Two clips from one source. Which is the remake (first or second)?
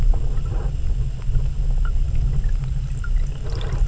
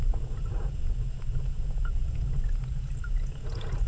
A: second